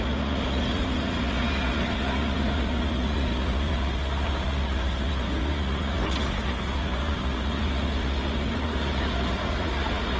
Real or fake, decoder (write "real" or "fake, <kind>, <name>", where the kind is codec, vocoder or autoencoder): fake, vocoder, Vocos